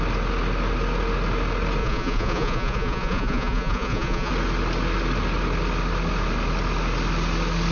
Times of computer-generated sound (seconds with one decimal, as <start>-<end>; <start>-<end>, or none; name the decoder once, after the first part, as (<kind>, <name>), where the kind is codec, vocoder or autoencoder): 1.8-4.3 (vocoder, Vocos)